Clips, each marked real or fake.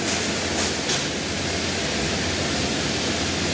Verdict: real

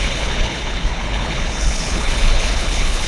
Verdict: fake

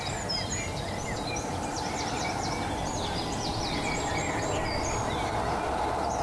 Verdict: real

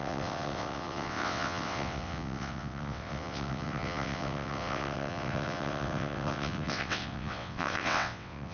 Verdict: fake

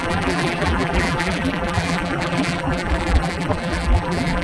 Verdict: fake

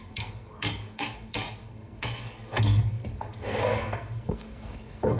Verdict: fake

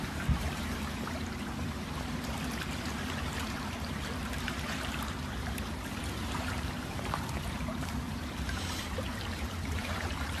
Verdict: fake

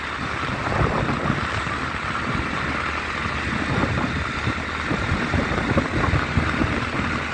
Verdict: real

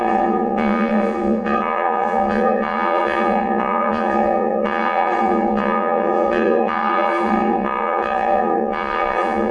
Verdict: fake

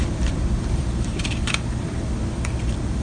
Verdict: fake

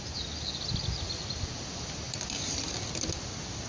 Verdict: real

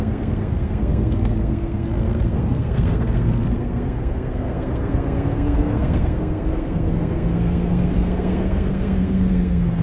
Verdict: fake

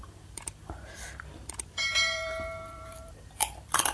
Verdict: fake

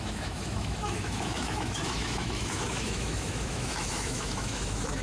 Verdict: fake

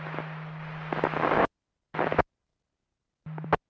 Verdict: real